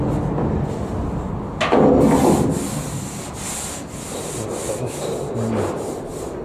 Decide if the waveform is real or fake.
real